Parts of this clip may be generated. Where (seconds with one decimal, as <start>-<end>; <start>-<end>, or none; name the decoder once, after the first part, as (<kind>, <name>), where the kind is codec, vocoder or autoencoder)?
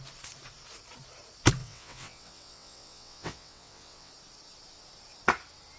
1.6-4.1 (vocoder, WaveNeXt)